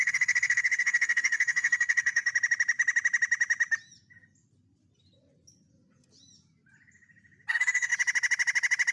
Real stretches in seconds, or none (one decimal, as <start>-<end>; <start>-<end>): 2.3-7.5; 7.9-8.9